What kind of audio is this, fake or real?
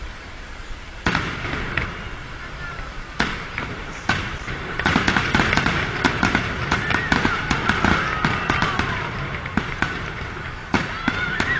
fake